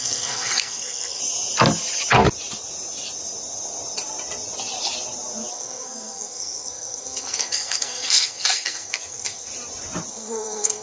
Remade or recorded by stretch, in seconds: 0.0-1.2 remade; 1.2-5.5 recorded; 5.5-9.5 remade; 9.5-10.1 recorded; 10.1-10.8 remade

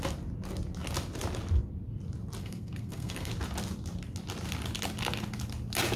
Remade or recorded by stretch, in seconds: 0.0-2.4 recorded; 2.4-3.3 remade; 3.3-6.0 recorded

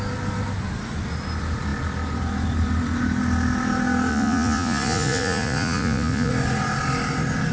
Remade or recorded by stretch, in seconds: 0.0-4.1 recorded; 4.1-6.3 remade; 6.3-7.5 recorded

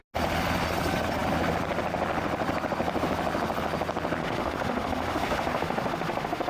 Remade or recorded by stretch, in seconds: 0.0-4.2 recorded; 4.2-6.5 remade

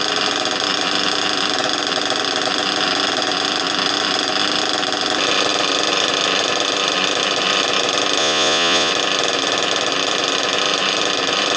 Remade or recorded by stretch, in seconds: 0.0-8.2 recorded; 8.2-8.9 remade; 8.9-11.6 recorded

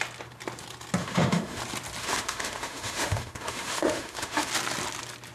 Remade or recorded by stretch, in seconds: 0.0-1.0 recorded; 1.0-1.6 remade; 1.6-2.0 recorded; 2.0-4.5 remade; 4.5-5.3 recorded